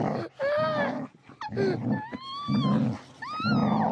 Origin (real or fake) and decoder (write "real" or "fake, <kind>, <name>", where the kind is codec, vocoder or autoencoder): real